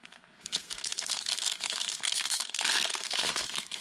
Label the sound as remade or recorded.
remade